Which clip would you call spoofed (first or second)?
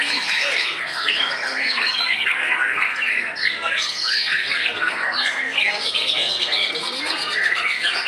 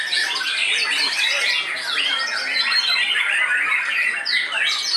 first